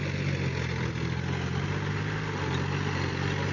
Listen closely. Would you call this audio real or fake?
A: real